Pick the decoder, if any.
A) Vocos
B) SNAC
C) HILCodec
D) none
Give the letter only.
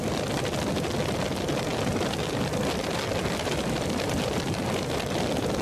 D